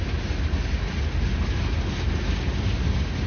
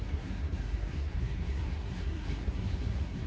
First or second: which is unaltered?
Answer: first